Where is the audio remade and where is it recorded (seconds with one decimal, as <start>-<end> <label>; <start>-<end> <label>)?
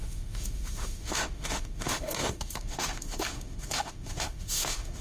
0.0-5.0 remade